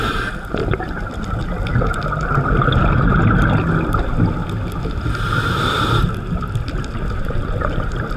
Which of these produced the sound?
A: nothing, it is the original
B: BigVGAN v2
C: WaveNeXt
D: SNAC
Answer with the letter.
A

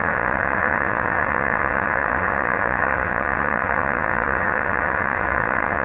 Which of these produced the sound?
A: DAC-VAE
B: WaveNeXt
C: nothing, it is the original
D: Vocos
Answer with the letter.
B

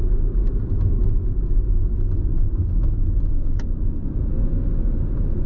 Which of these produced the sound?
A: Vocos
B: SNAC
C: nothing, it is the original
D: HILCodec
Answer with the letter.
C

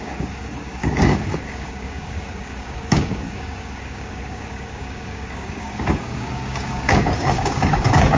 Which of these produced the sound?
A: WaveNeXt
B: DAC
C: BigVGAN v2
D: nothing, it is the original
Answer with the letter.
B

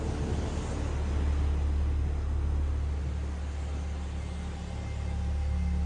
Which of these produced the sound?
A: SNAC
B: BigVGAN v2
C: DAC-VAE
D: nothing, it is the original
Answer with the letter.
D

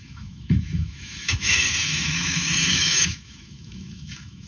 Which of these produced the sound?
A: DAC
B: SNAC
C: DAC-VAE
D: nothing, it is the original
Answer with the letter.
C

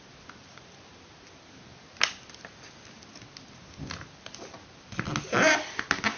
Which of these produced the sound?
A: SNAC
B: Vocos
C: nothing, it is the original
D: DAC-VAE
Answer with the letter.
C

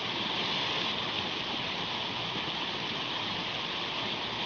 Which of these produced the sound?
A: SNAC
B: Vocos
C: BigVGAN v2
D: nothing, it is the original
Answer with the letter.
D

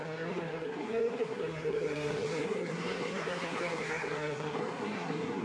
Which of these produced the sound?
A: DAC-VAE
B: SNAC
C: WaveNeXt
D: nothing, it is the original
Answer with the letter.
B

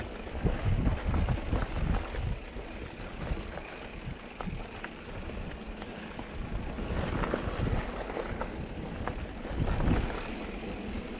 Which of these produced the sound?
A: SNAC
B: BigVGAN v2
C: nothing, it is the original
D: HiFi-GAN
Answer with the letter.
C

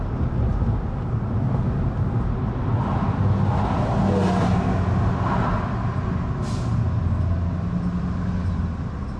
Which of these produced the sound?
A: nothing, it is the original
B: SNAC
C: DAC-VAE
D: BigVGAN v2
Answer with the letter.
A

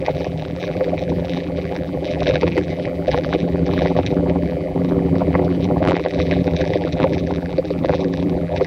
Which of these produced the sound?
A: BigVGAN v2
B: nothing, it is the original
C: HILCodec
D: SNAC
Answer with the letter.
A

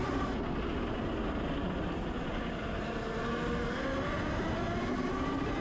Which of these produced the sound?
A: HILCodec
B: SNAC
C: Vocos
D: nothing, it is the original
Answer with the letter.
D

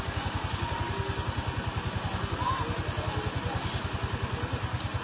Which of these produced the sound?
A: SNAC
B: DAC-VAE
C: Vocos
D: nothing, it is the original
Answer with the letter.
D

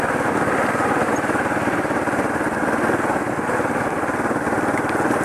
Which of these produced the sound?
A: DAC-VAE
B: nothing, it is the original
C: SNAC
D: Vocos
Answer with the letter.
B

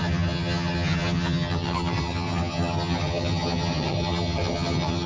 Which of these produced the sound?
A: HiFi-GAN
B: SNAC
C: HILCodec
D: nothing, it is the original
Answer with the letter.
A